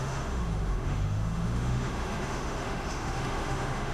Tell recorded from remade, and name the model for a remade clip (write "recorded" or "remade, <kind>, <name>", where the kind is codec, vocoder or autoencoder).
remade, autoencoder, DAC-VAE